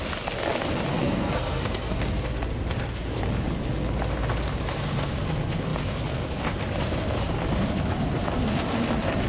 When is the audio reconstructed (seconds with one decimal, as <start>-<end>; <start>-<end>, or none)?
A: 0.9-2.0